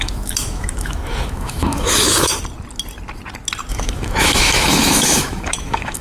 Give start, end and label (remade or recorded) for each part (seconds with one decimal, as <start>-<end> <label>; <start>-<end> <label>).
0.0-2.3 remade; 2.3-3.7 recorded; 3.7-6.0 remade